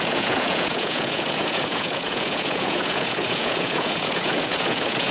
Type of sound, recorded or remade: remade